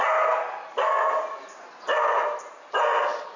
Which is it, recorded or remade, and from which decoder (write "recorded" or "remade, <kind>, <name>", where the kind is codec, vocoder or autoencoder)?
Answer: recorded